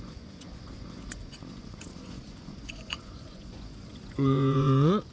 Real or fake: fake